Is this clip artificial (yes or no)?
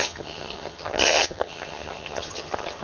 yes